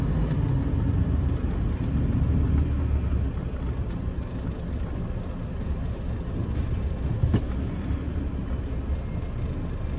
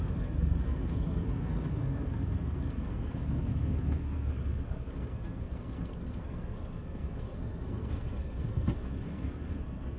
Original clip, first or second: first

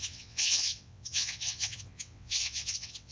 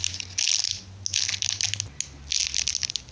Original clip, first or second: second